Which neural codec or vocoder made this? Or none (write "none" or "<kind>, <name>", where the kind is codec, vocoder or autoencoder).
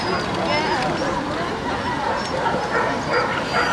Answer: none